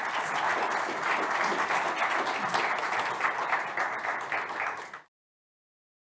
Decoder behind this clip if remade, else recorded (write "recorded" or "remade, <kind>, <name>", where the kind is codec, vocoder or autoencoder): recorded